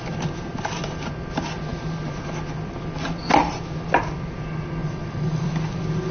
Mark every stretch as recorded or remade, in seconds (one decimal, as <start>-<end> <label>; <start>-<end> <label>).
0.0-4.8 recorded; 4.8-5.5 remade; 5.5-6.1 recorded